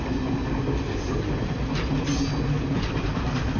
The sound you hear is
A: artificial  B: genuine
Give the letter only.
B